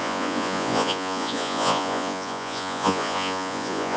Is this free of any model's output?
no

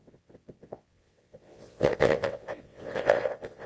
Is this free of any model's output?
no